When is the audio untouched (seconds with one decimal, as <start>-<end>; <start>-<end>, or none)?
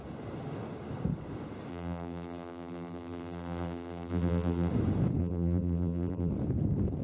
0.0-1.7; 4.7-5.2; 6.3-7.0